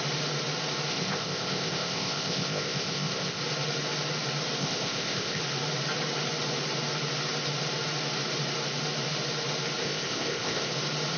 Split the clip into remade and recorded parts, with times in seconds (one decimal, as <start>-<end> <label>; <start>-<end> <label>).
0.0-0.9 recorded; 0.9-3.4 remade; 3.4-4.6 recorded; 4.6-5.4 remade; 5.4-9.8 recorded; 9.8-10.7 remade; 10.7-11.2 recorded